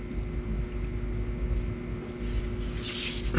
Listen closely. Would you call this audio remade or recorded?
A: recorded